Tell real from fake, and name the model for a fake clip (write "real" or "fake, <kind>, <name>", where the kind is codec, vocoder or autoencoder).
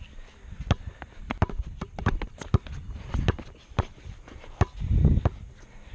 real